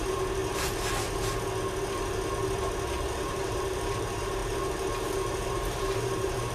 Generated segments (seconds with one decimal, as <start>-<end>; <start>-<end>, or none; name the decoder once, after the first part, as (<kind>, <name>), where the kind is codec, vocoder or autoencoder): 0.0-0.4 (vocoder, BigVGAN v2); 3.1-4.4; 5.1-6.5

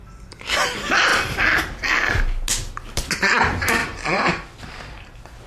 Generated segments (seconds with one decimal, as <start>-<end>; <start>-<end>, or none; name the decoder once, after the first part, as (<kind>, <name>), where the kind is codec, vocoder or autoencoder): 3.8-5.1 (vocoder, BigVGAN v2)

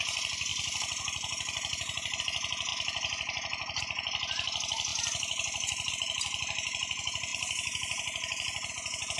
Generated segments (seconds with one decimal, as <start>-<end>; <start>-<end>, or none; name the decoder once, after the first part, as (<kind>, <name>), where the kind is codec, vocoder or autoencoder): 0.5-2.2 (vocoder, BigVGAN v2); 2.7-3.8

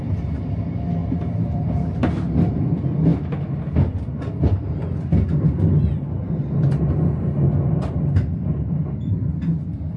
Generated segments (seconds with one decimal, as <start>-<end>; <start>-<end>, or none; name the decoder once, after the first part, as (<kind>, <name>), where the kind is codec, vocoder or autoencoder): 1.0-2.0 (vocoder, BigVGAN v2)

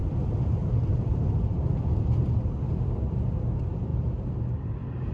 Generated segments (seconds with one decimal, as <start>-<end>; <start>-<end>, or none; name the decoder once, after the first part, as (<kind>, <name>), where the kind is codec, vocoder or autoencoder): 0.0-3.1 (vocoder, BigVGAN v2); 3.9-4.4

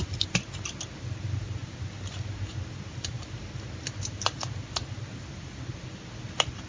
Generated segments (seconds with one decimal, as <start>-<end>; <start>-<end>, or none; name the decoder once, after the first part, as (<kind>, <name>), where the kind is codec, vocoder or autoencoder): none